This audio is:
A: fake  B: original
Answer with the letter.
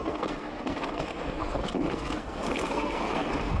A